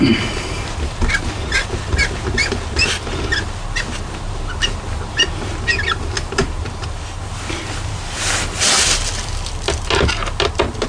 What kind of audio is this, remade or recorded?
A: recorded